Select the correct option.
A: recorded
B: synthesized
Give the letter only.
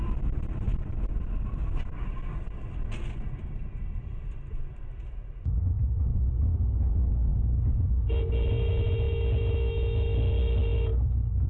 A